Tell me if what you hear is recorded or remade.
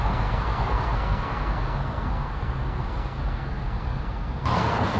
remade